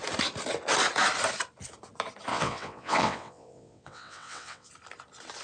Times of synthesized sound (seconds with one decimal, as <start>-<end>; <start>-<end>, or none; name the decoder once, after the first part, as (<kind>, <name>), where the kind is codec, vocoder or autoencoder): 2.3-4.7 (vocoder, WaveNeXt)